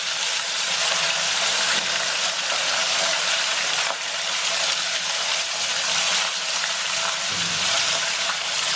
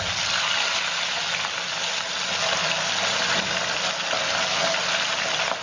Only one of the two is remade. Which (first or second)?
first